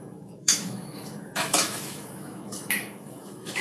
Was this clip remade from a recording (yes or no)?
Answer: yes